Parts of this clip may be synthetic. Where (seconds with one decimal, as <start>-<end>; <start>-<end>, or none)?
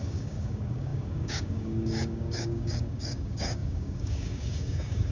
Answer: 0.0-5.1